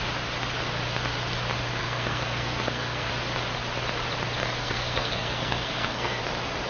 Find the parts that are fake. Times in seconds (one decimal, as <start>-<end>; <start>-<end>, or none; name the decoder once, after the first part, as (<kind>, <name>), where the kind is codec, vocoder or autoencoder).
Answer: 1.8-3.1 (codec, SNAC); 4.4-6.2